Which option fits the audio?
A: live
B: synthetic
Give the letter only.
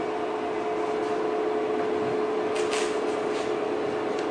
A